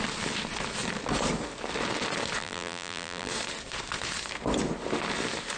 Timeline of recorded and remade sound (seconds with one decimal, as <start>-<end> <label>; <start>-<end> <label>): 0.0-2.4 recorded; 2.4-3.3 remade; 3.3-5.6 recorded